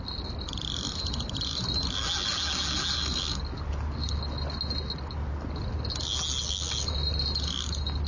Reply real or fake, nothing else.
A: real